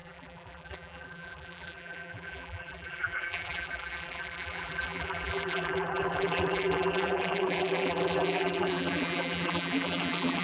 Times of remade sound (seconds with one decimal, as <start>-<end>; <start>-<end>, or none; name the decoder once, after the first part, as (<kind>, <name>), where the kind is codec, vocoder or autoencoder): 0.0-10.4 (vocoder, BigVGAN v2)